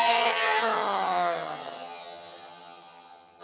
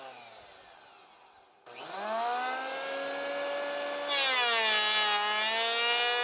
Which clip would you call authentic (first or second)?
second